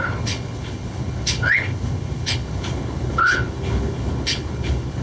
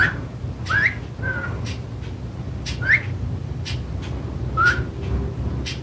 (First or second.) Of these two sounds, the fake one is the first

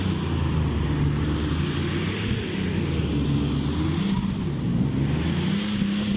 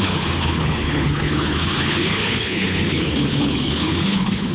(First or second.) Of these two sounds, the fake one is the second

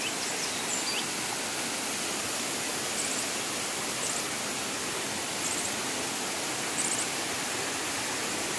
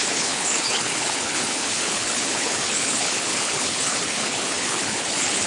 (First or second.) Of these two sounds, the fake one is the second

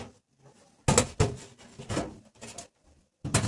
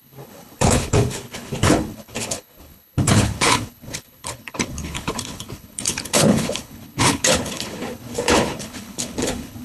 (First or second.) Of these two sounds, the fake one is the second